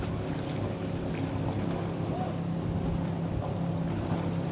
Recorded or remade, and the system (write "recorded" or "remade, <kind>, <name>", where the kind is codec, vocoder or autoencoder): recorded